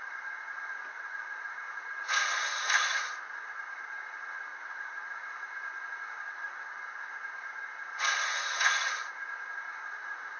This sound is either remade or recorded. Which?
remade